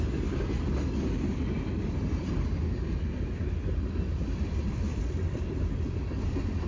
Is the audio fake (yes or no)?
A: no